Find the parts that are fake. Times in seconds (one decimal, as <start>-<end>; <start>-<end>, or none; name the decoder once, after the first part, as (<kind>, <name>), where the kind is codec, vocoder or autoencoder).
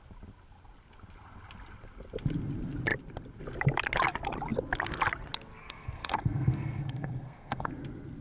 5.6-7.7 (codec, SNAC)